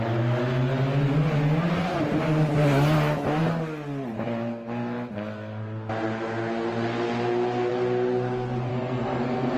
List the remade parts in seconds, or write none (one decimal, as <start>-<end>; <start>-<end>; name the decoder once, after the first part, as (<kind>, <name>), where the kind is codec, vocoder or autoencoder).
8.7-9.6 (codec, SNAC)